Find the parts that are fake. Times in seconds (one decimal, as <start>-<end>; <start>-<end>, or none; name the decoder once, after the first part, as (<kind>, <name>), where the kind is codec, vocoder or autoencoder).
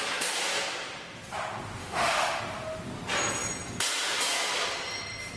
1.8-2.4 (autoencoder, DAC-VAE)